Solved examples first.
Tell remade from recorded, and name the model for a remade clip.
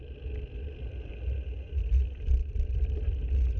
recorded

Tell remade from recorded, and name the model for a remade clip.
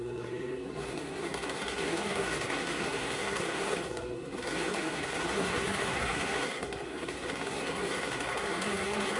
remade, codec, SNAC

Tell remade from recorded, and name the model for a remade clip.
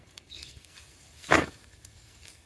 remade, codec, SNAC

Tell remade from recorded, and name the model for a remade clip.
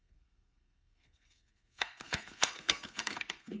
remade, codec, SNAC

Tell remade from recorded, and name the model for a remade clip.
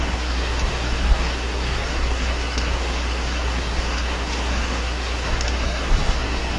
remade, codec, SNAC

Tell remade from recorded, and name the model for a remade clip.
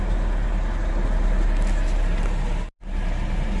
recorded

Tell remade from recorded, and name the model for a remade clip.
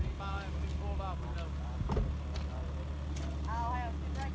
recorded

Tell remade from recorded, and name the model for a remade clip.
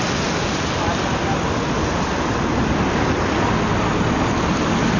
recorded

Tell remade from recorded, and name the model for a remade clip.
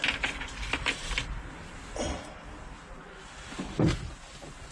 recorded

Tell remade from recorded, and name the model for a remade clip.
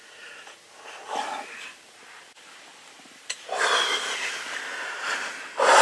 recorded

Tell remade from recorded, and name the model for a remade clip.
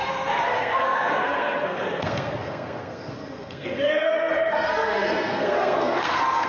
remade, codec, SNAC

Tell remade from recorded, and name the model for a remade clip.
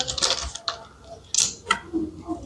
recorded